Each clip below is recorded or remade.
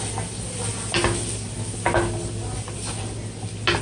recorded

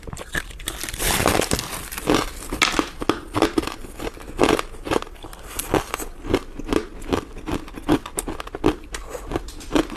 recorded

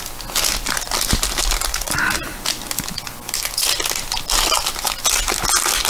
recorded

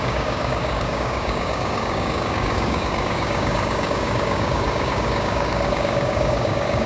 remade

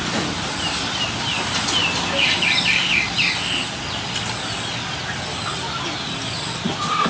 recorded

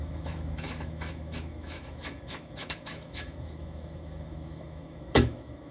remade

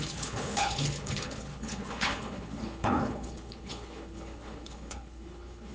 remade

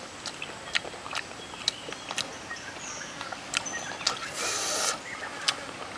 recorded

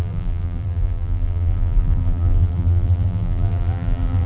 remade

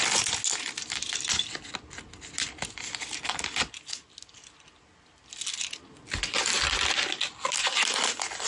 recorded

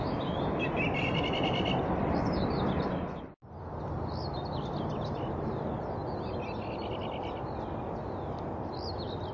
recorded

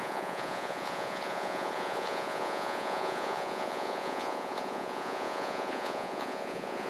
remade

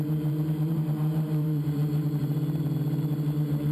remade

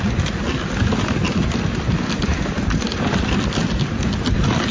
recorded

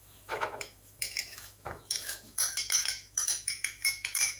remade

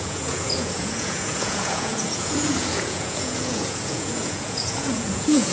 remade